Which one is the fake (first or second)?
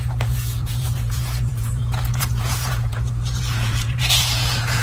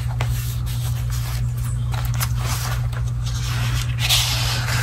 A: first